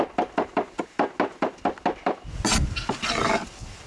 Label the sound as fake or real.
real